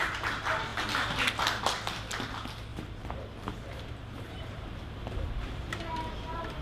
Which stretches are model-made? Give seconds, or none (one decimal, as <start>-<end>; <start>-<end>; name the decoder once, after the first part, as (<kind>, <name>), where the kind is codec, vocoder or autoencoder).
2.7-6.6 (vocoder, BigVGAN v2)

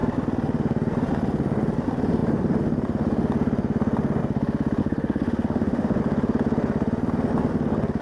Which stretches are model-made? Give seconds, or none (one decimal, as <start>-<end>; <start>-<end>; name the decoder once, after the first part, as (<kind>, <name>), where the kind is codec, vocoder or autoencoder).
4.8-6.0 (autoencoder, DAC-VAE)

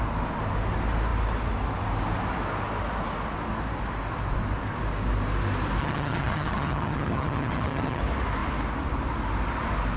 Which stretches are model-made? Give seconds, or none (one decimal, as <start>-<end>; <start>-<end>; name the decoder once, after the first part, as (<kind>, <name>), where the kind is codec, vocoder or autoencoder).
5.8-8.0 (vocoder, HiFi-GAN)